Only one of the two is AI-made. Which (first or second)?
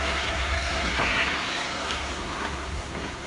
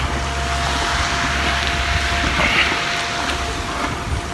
first